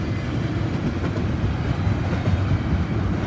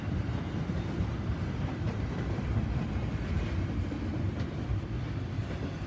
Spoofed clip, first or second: second